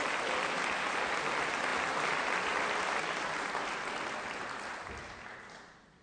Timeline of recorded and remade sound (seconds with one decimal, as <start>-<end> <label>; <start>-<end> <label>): 0.0-6.0 recorded